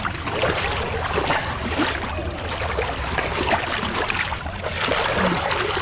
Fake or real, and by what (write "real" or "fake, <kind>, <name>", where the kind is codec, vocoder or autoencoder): real